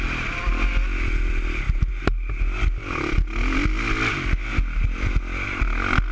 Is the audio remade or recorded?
recorded